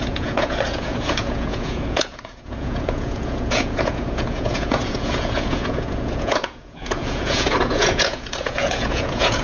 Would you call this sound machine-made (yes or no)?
yes